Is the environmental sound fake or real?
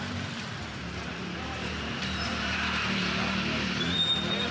fake